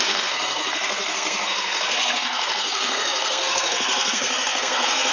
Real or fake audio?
fake